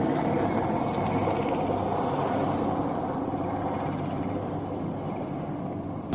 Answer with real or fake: real